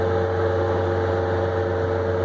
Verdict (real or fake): real